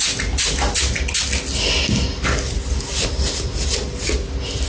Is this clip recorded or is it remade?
recorded